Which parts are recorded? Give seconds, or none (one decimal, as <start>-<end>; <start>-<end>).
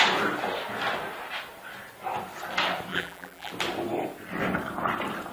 0.0-2.9; 3.5-5.3